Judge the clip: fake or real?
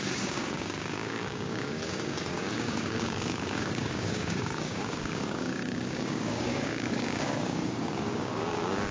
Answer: fake